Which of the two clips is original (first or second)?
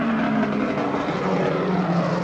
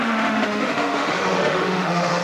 first